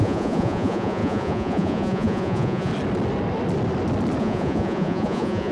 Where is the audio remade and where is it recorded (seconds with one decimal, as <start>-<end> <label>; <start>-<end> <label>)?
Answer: 0.0-2.7 remade; 2.7-4.2 recorded; 4.2-5.5 remade